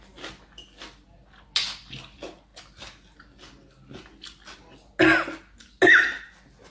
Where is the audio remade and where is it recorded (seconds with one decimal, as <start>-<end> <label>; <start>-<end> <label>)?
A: 0.0-6.7 recorded